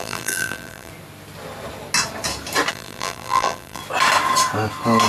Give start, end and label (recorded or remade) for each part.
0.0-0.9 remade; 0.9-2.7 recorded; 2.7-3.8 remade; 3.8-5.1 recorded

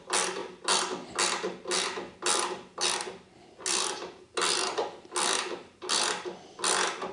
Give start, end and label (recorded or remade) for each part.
0.0-7.1 recorded

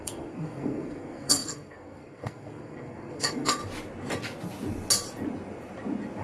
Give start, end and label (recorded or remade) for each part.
0.0-3.6 remade; 3.6-6.2 recorded

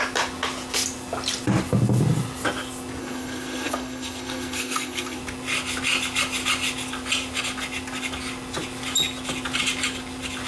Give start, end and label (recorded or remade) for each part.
0.0-3.0 recorded; 3.0-5.2 remade; 5.2-10.5 recorded

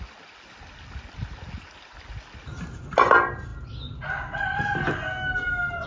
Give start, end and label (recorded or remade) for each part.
0.0-5.9 recorded

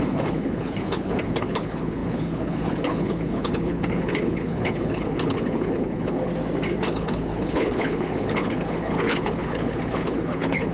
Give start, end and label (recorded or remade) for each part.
0.0-6.3 remade; 6.3-6.9 recorded; 6.9-10.7 remade